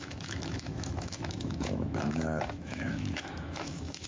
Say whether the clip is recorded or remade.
remade